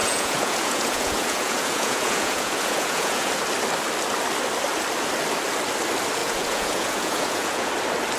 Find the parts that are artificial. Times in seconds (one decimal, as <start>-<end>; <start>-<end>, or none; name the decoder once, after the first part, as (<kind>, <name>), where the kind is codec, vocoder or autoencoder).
0.0-3.3 (vocoder, Vocos); 6.2-7.7